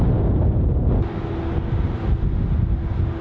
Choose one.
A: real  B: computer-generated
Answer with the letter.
A